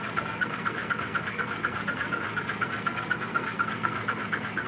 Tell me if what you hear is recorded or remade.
remade